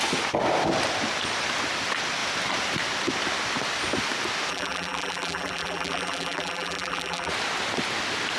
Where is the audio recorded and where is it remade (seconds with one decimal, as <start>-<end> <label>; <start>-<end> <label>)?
0.0-4.5 recorded; 4.5-7.3 remade; 7.3-8.4 recorded